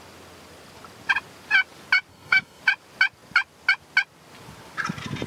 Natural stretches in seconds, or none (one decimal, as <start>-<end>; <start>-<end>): 0.0-2.1; 2.6-5.3